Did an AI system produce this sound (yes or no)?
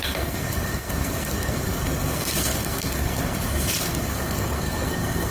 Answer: yes